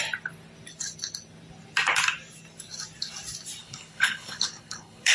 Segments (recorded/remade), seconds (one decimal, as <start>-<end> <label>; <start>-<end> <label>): 0.0-3.6 recorded; 3.6-5.1 remade